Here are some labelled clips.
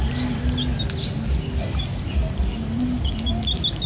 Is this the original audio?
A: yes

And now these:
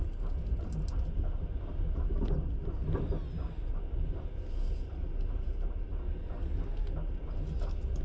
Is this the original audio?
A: yes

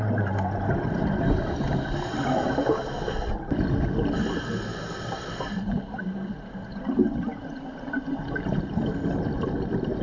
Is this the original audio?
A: yes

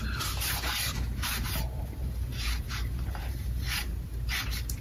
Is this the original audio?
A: no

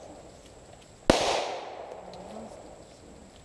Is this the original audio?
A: yes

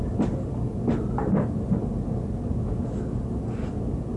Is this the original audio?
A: yes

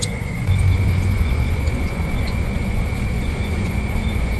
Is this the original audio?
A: no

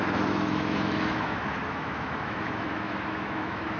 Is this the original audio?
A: no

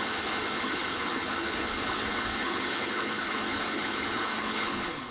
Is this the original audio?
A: no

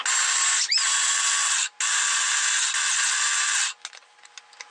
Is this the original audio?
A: yes